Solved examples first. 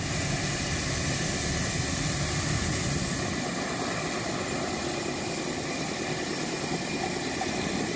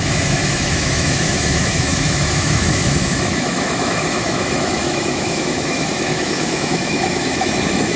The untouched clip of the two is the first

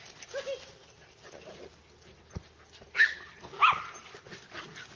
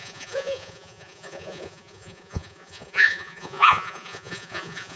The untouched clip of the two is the first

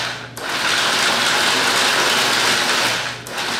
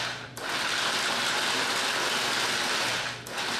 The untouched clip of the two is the first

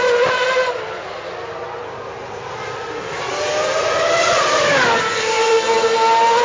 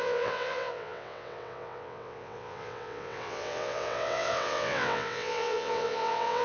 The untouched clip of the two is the first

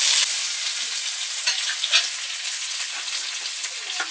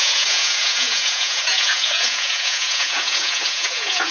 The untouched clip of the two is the first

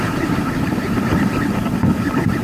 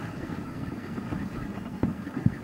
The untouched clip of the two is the first